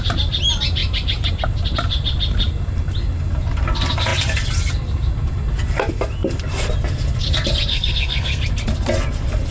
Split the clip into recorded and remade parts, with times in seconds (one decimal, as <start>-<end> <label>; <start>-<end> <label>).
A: 0.0-7.7 recorded; 7.7-8.4 remade; 8.4-9.5 recorded